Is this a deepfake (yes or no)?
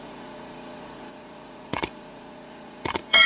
yes